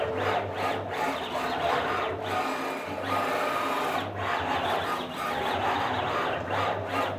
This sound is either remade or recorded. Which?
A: recorded